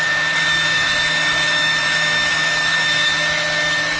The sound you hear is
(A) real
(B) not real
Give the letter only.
B